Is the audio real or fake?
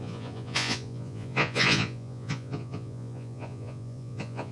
fake